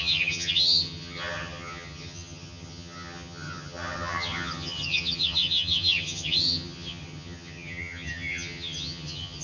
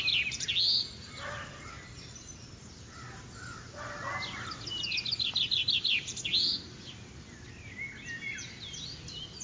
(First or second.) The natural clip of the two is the second